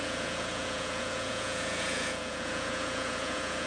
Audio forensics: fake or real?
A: fake